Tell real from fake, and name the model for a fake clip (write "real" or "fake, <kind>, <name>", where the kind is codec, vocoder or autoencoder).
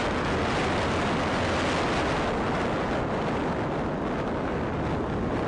real